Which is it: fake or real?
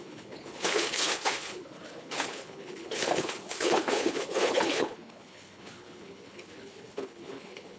fake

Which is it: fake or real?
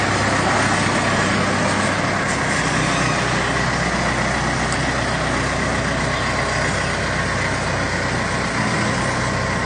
real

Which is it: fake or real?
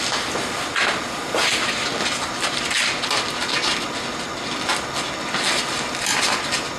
real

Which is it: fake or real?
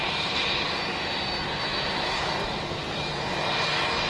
real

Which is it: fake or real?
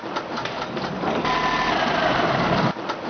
real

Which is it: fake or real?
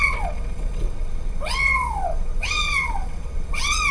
fake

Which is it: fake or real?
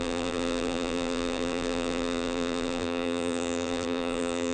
fake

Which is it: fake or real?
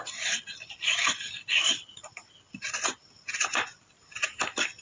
real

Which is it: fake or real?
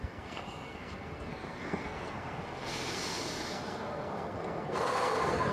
fake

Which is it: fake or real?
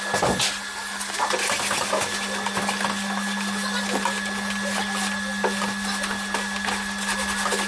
real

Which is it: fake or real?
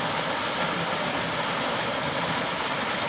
real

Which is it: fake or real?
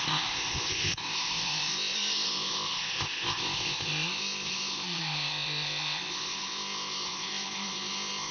fake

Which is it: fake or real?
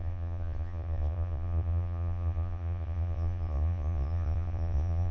fake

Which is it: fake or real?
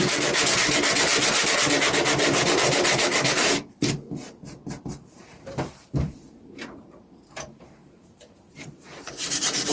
fake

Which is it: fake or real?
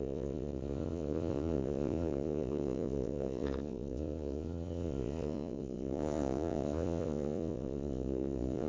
fake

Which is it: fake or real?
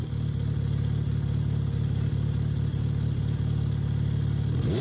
real